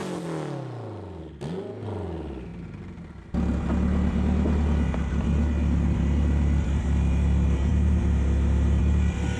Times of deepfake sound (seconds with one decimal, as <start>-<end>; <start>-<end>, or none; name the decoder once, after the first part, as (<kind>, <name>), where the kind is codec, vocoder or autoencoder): none

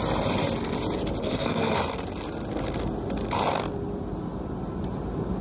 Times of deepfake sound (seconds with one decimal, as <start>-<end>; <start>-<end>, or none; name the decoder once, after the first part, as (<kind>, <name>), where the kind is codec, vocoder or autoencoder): 1.2-1.8 (codec, SNAC)

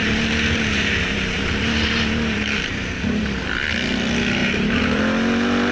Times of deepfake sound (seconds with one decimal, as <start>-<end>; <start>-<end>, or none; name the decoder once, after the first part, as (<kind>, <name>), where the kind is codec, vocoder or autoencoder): 0.0-3.4 (vocoder, BigVGAN v2); 4.4-5.0

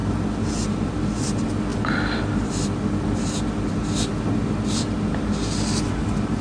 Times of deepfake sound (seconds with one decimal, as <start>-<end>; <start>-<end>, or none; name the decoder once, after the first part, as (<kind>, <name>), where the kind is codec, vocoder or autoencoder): none

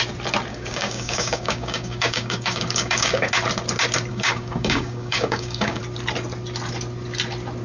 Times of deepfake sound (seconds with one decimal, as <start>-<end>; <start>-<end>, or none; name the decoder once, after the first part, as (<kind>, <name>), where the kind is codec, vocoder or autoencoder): 0.5-3.3 (codec, DAC); 4.1-5.8

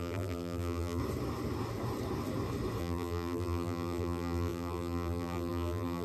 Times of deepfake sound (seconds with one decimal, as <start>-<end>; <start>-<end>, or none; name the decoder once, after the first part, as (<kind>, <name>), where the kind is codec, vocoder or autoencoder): 0.0-1.0 (vocoder, BigVGAN v2); 2.8-6.0